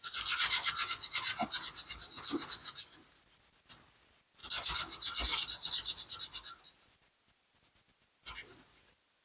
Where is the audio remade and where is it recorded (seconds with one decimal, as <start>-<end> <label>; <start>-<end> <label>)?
0.0-9.2 recorded